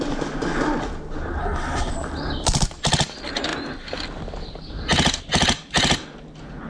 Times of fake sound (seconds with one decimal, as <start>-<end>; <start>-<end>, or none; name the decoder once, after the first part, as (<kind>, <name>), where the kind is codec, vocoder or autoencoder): 1.4-1.9 (codec, HILCodec)